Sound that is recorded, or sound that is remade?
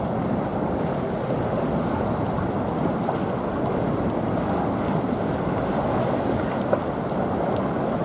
recorded